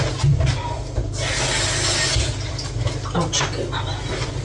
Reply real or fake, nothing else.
real